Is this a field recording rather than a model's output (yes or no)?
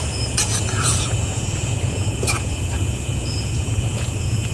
no